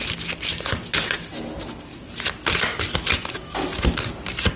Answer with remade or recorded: recorded